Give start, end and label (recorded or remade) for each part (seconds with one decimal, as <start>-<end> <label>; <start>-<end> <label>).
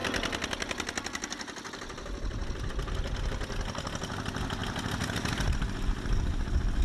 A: 0.0-6.8 recorded